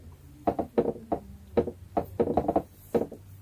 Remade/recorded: recorded